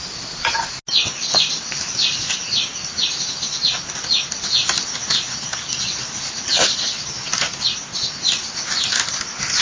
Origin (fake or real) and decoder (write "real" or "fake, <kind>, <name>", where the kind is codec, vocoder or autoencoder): real